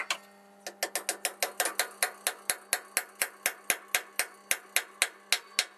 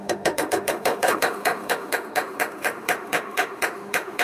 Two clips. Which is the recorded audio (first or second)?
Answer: first